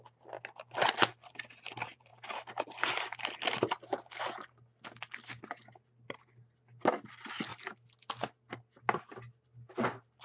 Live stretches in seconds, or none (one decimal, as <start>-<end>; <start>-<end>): 0.0-10.2